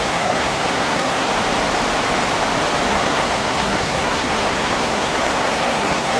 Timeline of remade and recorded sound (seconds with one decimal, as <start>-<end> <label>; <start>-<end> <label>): 0.0-1.3 remade; 1.3-2.9 recorded; 2.9-6.2 remade

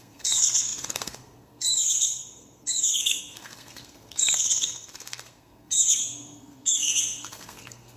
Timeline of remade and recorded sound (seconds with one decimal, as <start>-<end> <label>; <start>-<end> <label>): 0.0-8.0 remade

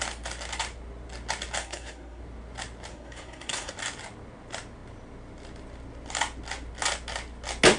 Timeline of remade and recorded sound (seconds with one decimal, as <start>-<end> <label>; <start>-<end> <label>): 0.0-1.6 recorded; 1.6-2.2 remade; 2.2-2.9 recorded; 2.9-3.7 remade; 3.7-7.8 recorded

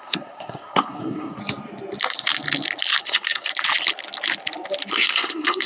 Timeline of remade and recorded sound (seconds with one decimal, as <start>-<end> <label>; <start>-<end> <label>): 0.0-1.4 remade; 1.4-3.0 recorded; 3.0-3.5 remade; 3.5-4.9 recorded; 4.9-5.7 remade

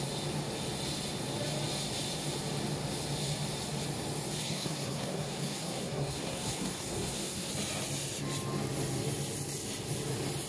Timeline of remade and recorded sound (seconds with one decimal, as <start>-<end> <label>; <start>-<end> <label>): 0.0-4.4 recorded; 4.4-7.5 remade; 7.5-10.5 recorded

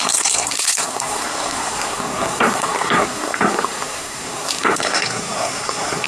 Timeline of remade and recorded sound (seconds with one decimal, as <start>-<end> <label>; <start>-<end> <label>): 0.0-6.1 remade

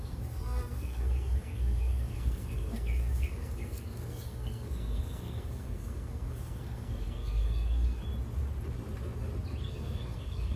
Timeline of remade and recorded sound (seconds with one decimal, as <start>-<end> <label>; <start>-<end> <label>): 0.0-8.0 remade; 8.0-9.6 recorded; 9.6-10.6 remade

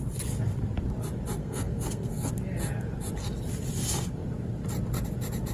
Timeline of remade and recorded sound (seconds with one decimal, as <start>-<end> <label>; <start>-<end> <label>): 0.0-1.4 recorded; 1.4-2.3 remade; 2.3-5.5 recorded